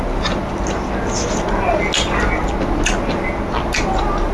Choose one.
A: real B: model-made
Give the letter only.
A